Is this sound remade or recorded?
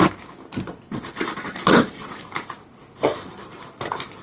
recorded